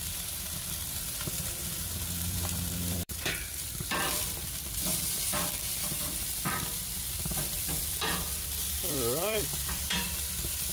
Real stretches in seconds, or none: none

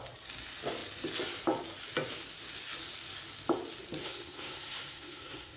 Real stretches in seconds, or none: 0.0-4.0

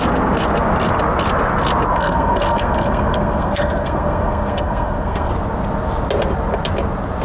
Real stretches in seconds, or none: 0.0-1.9; 5.3-7.2

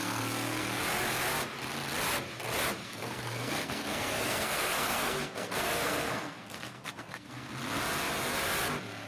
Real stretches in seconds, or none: 0.8-2.8; 7.5-9.1

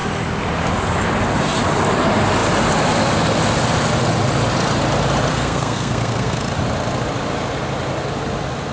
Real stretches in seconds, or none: 0.0-5.3; 6.4-8.7

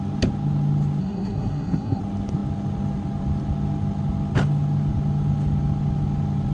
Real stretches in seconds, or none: 0.0-1.0; 2.0-6.5

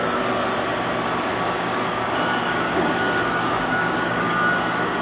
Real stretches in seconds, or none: 0.0-1.3; 4.3-5.0